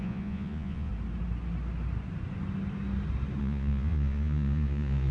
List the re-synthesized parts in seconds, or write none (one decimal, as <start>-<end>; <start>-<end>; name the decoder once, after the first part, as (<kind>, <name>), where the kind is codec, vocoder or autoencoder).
0.0-0.9 (vocoder, Vocos); 3.4-5.1